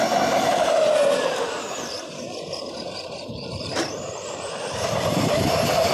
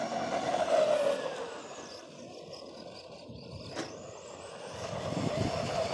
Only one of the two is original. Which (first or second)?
second